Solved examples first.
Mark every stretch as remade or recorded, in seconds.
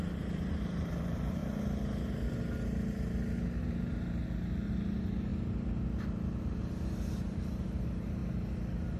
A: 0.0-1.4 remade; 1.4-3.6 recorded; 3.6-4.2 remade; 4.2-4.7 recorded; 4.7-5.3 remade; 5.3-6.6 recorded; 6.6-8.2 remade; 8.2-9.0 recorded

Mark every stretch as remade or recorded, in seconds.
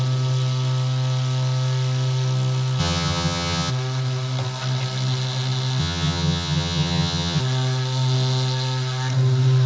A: 0.0-2.8 recorded; 2.8-3.7 remade; 3.7-5.8 recorded; 5.8-7.4 remade; 7.4-9.7 recorded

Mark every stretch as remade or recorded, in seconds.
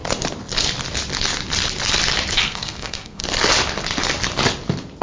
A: 0.0-2.4 recorded; 2.4-3.2 remade; 3.2-5.0 recorded